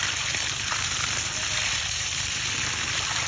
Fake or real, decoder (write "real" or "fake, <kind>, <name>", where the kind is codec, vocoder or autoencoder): real